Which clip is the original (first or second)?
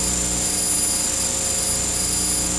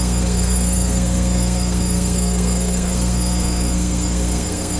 first